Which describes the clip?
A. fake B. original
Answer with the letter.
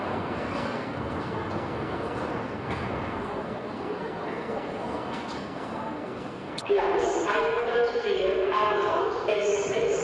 A